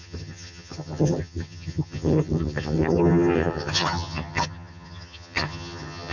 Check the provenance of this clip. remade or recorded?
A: remade